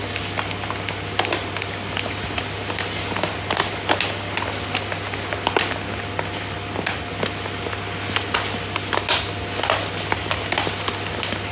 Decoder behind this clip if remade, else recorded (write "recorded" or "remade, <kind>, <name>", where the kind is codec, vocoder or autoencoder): recorded